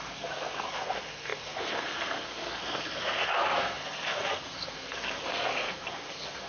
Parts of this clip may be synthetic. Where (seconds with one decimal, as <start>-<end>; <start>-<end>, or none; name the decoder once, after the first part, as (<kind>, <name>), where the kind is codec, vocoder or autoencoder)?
0.0-6.5 (codec, SNAC)